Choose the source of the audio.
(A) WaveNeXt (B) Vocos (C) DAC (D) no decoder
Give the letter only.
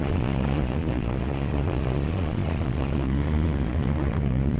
B